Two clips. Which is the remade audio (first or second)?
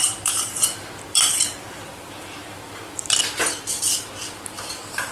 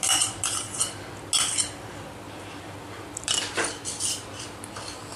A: first